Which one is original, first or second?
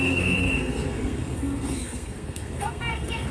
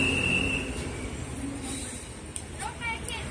second